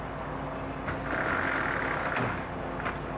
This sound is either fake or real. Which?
real